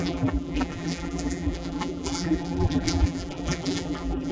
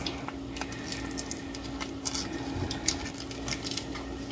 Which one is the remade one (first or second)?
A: first